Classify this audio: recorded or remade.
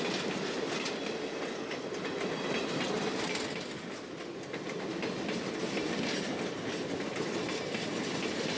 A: recorded